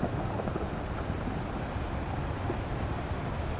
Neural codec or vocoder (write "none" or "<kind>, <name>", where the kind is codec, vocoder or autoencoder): none